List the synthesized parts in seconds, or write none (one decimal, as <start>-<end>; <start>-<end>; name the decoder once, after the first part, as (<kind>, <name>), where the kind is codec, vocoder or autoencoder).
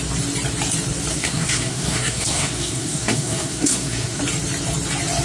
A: 1.1-4.2 (codec, SNAC)